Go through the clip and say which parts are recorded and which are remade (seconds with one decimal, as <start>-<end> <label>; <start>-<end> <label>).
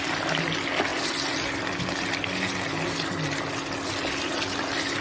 0.0-5.0 recorded